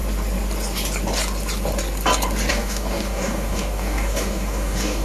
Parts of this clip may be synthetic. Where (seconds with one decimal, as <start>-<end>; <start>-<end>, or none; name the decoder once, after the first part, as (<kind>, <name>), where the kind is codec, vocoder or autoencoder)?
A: 2.5-5.0 (codec, DAC)